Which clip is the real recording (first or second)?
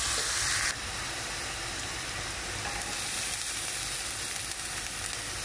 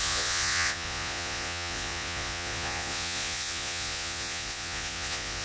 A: first